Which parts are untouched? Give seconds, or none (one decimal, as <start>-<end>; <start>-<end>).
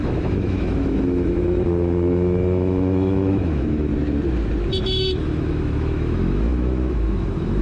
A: 3.9-4.8